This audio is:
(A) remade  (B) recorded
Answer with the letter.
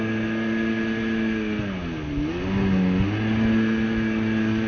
B